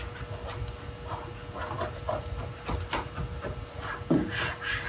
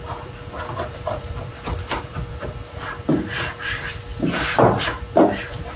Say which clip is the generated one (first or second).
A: second